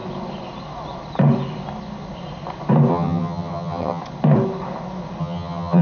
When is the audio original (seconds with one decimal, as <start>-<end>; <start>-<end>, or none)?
0.0-2.9; 4.0-5.2